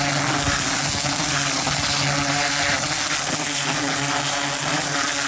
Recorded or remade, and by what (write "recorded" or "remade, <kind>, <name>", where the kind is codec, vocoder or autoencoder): recorded